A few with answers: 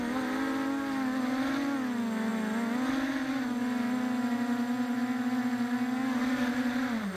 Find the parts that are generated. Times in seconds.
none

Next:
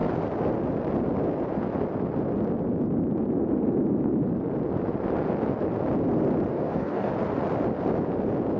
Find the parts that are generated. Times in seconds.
6.5-7.1 (codec, DAC)

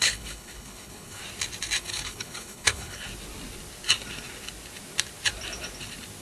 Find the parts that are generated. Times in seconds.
0.0-1.2 (codec, HILCodec); 1.8-3.1

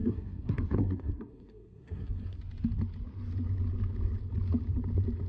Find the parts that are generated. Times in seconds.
0.0-2.4 (codec, SNAC)

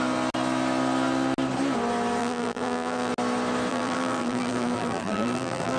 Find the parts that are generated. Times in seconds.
2.2-3.1 (vocoder, BigVGAN v2); 3.7-5.8

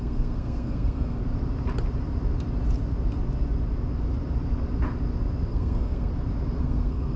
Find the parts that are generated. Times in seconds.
0.0-1.2 (codec, SNAC); 5.5-6.1; 6.6-7.2

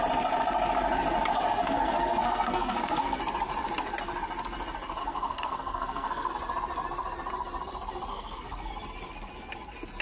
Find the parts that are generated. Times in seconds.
1.3-3.2 (codec, SNAC); 5.0-6.3; 8.1-8.7

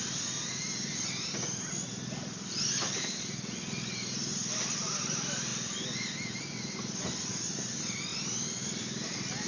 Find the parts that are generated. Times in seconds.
none